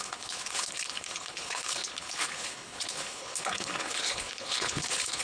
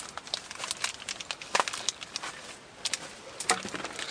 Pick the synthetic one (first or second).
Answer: first